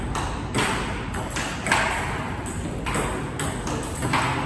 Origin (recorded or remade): recorded